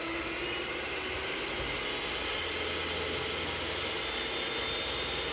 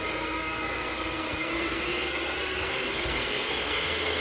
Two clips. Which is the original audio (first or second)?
first